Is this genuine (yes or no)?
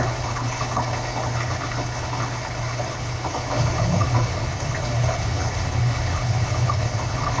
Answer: no